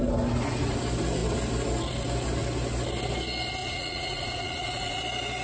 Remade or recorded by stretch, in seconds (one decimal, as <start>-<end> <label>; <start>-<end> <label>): 0.0-3.6 recorded; 3.6-5.0 remade; 5.0-5.4 recorded